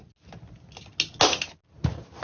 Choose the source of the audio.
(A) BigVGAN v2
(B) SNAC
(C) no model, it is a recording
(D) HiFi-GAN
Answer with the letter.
C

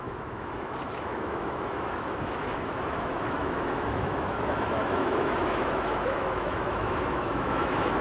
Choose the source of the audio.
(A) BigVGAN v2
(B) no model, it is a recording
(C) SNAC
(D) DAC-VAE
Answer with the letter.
D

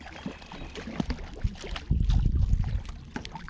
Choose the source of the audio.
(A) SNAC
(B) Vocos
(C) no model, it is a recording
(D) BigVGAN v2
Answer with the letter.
C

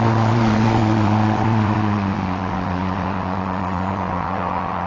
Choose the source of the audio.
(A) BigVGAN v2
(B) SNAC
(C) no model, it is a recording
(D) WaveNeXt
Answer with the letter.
D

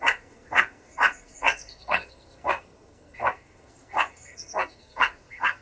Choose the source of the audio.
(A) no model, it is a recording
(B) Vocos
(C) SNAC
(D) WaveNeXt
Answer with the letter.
C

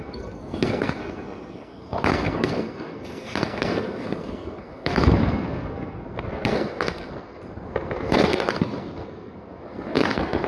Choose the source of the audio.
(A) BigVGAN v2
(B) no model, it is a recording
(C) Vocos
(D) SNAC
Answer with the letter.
D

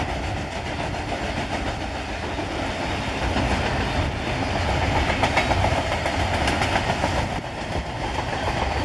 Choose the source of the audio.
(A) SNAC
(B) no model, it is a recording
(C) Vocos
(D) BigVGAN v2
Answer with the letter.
B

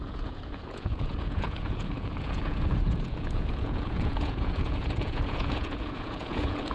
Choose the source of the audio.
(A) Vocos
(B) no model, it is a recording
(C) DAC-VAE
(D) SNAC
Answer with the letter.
A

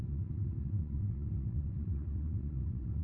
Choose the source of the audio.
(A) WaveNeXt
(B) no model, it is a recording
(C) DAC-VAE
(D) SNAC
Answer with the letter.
A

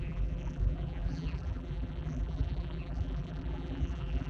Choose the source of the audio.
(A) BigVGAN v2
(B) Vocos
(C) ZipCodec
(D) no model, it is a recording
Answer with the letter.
A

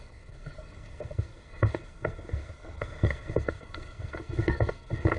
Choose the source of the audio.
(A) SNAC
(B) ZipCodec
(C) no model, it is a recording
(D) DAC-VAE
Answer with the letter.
A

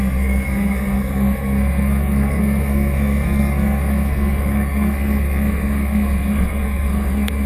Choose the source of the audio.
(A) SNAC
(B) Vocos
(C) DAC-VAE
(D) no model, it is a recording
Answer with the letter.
A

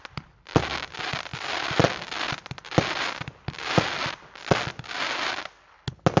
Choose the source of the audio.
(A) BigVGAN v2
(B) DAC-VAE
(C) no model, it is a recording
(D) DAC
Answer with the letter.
C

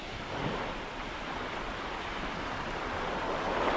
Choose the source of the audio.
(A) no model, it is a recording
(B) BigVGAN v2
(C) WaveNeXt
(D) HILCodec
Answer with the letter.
A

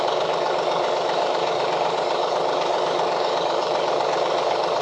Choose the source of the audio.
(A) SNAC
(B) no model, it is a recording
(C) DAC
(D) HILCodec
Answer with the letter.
C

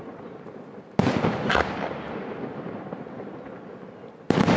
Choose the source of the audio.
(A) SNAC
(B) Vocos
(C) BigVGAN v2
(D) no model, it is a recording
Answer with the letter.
D